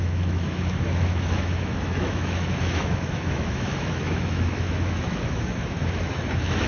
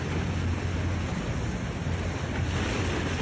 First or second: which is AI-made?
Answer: first